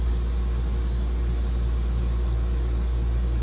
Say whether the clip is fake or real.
real